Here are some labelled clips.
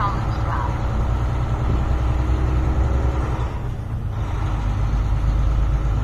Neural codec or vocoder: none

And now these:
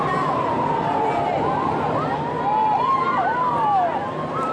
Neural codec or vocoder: none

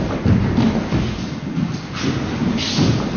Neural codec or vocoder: none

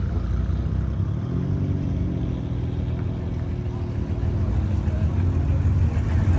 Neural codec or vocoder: none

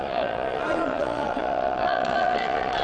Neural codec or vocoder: vocoder, Vocos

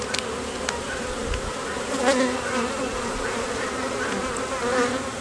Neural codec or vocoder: none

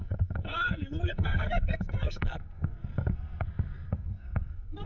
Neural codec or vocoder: codec, SNAC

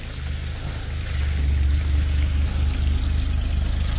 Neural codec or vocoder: none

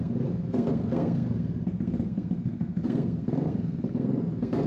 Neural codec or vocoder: codec, SNAC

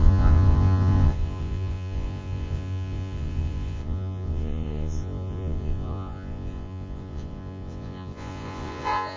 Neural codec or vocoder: vocoder, Vocos